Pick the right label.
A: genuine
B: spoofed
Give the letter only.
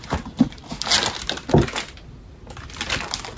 A